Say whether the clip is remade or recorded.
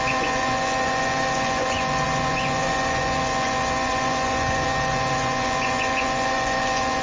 remade